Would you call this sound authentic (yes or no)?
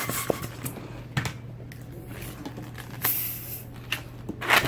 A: yes